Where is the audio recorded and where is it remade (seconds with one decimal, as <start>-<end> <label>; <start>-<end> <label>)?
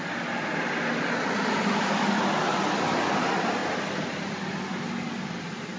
0.0-5.8 recorded